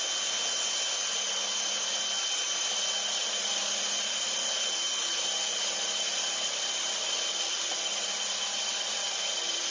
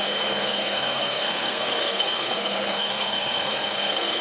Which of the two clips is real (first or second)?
first